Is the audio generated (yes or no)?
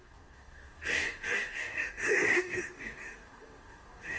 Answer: yes